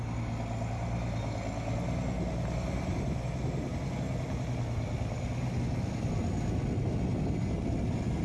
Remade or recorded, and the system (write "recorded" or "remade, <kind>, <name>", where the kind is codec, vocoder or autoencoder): recorded